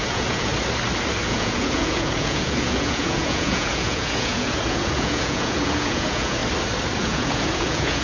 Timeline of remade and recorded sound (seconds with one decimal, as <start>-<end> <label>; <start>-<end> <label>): 0.0-0.5 remade; 0.5-1.3 recorded; 1.3-6.4 remade; 6.4-7.0 recorded; 7.0-8.0 remade